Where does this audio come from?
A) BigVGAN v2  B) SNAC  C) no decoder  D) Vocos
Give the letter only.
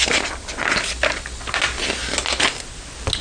C